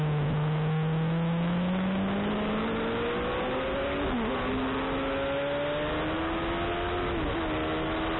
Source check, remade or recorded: recorded